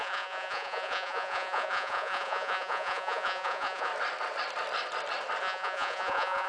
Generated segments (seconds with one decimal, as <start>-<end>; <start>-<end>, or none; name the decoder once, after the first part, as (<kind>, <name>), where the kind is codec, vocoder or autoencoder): 0.0-3.9 (vocoder, Vocos); 5.4-6.5